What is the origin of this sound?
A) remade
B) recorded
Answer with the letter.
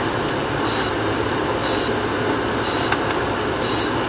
B